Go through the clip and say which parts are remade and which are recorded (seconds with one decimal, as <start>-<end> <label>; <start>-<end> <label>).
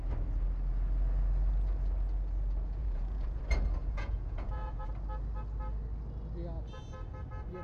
0.0-2.8 recorded; 2.8-3.4 remade; 3.4-3.8 recorded; 3.8-4.9 remade; 4.9-7.6 recorded